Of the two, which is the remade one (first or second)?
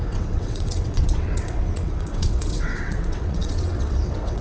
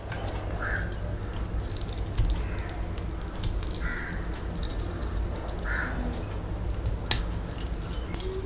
first